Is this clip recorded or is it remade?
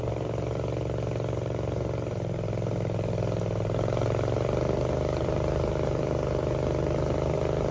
recorded